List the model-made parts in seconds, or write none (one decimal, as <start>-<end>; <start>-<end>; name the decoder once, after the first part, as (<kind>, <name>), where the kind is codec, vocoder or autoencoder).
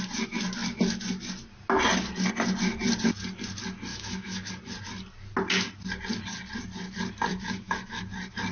3.9-4.5 (autoencoder, DAC-VAE); 7.3-8.0